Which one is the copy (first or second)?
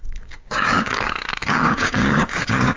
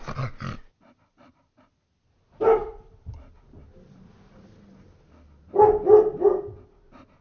first